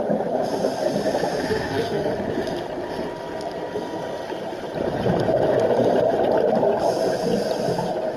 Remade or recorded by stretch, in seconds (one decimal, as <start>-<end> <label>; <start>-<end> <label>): 0.0-1.3 recorded; 1.3-2.1 remade; 2.1-8.2 recorded